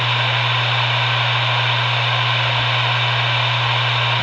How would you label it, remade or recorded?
recorded